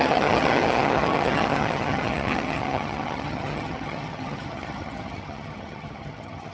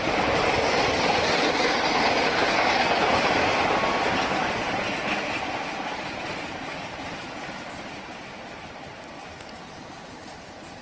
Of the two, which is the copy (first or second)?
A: first